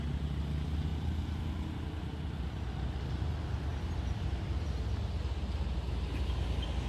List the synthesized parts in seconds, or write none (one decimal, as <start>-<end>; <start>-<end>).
3.7-4.6